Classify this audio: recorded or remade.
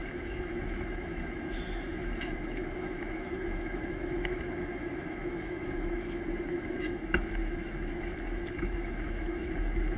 remade